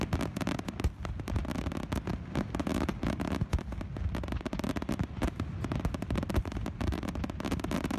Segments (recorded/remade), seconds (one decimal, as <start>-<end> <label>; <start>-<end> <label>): 0.0-8.0 recorded